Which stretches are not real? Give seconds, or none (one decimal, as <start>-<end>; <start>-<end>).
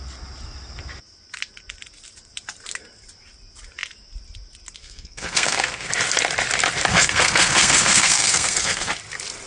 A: 4.8-5.9; 6.9-8.9